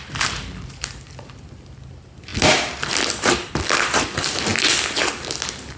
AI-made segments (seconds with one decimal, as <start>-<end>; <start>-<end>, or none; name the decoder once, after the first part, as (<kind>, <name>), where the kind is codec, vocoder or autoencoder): none

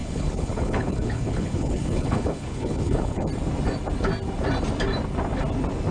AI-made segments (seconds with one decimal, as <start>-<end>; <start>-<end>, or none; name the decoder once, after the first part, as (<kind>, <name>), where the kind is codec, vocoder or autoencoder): 0.0-3.3 (codec, HILCodec)

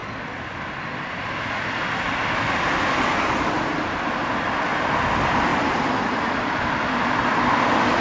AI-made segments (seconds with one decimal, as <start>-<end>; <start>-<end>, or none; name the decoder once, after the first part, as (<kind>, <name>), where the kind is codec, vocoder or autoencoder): none

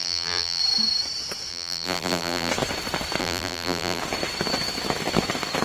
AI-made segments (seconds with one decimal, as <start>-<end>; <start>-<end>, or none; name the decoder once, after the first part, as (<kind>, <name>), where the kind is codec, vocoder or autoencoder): 0.0-0.6 (vocoder, BigVGAN v2); 1.5-2.5; 3.2-4.0

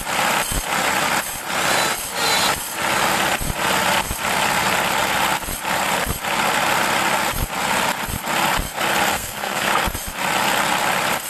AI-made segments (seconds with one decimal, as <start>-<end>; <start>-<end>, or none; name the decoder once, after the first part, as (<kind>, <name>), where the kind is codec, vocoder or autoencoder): 9.1-9.7 (codec, SNAC)

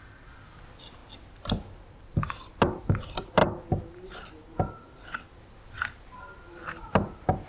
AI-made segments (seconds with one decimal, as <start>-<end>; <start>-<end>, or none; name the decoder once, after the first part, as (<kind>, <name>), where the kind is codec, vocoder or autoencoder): none

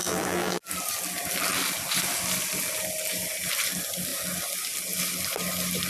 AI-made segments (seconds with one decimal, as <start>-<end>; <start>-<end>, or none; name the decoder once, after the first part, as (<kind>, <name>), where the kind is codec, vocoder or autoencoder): 0.0-0.6 (vocoder, BigVGAN v2)